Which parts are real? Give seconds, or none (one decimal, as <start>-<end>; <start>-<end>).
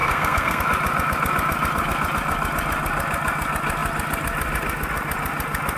0.6-5.8